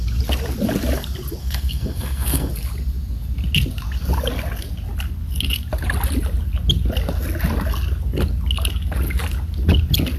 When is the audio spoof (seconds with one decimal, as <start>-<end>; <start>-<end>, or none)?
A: 1.4-2.5